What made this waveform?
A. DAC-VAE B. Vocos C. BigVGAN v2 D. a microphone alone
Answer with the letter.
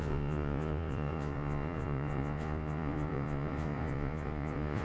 B